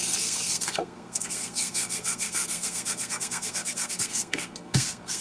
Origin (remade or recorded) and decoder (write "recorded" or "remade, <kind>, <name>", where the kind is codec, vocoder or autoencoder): remade, codec, SNAC